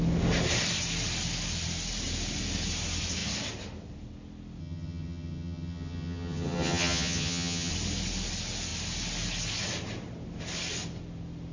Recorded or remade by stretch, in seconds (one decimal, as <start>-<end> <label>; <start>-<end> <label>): 0.0-4.6 recorded; 4.6-7.7 remade; 7.7-11.5 recorded